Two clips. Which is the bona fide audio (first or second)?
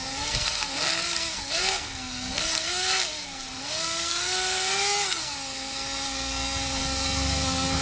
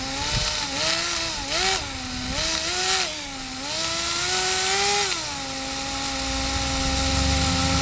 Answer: second